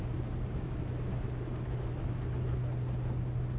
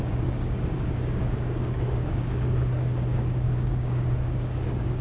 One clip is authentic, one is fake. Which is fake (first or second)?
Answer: second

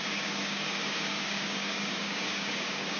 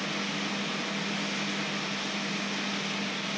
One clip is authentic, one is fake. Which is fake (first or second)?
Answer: first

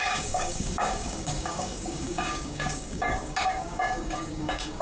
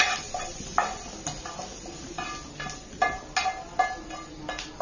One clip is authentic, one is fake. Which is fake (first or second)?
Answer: first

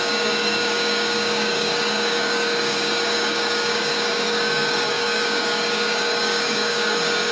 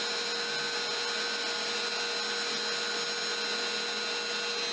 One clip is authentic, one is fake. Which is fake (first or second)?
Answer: first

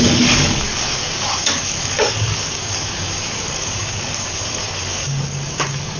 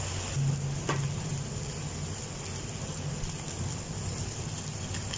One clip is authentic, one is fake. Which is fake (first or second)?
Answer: first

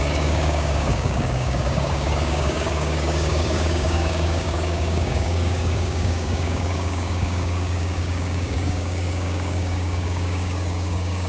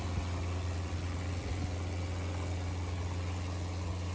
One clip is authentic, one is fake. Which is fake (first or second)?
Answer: first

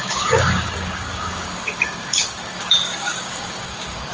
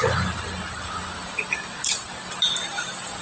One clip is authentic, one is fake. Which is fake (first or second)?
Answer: first